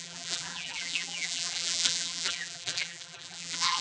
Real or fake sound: fake